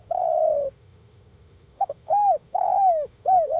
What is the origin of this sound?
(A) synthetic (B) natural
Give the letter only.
A